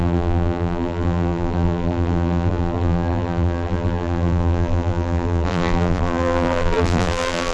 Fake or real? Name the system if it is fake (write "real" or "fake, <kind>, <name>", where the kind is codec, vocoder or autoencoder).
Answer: fake, vocoder, BigVGAN v2